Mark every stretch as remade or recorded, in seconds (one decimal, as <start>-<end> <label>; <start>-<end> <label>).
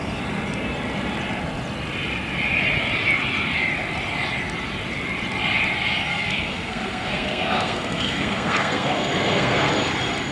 0.0-6.1 recorded; 6.1-9.7 remade; 9.7-10.3 recorded